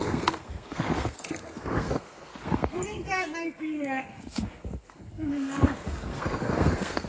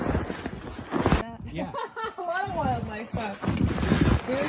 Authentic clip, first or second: second